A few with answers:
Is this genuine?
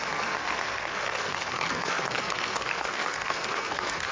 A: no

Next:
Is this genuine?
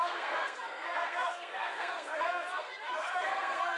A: no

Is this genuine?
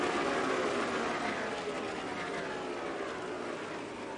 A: yes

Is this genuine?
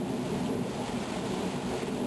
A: yes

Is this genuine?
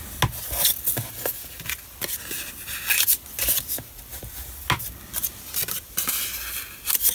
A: yes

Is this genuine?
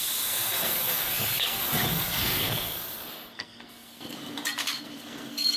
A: no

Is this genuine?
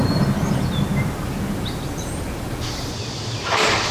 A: yes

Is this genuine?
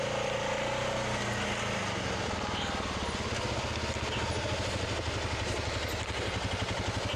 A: yes